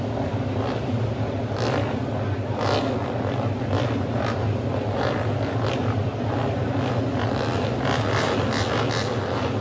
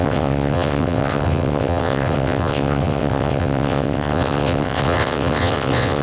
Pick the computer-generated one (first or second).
second